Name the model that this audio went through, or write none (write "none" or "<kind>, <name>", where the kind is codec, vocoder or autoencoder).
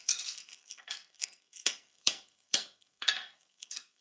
codec, SNAC